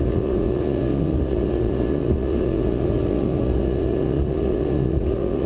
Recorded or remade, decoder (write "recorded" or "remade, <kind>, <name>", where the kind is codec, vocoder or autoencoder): remade, vocoder, Vocos